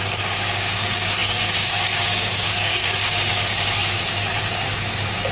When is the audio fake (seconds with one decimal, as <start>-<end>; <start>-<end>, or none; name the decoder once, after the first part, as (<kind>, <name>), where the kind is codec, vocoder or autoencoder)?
0.0-5.3 (codec, DAC)